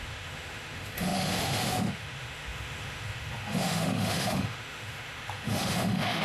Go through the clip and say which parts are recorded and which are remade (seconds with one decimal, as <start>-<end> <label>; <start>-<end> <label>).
0.0-6.2 remade

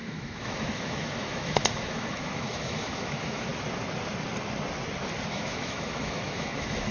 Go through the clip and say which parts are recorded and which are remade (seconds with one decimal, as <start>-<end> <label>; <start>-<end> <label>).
0.0-3.5 remade; 3.5-5.3 recorded; 5.3-6.9 remade

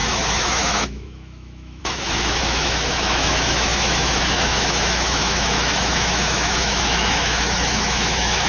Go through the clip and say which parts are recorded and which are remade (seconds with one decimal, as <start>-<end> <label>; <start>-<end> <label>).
0.0-8.5 remade

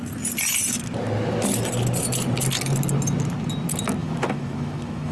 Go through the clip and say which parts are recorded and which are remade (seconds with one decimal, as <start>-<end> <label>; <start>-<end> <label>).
0.0-4.0 recorded; 4.0-5.1 remade

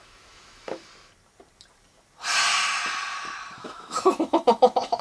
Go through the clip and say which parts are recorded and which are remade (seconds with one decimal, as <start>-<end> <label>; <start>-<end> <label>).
0.0-0.9 remade; 0.9-3.6 recorded; 3.6-5.0 remade

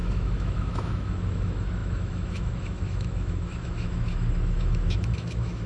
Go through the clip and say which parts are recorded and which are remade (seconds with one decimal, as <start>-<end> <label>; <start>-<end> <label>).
0.0-5.7 remade

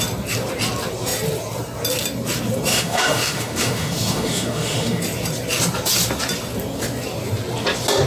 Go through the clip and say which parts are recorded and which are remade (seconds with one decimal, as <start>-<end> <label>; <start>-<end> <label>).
0.0-2.7 recorded; 2.7-5.0 remade; 5.0-8.1 recorded